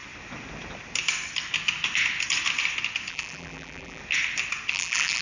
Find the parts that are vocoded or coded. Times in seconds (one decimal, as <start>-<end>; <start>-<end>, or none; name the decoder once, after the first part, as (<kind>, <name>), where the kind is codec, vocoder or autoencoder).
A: 3.1-4.0 (vocoder, BigVGAN v2); 4.7-5.2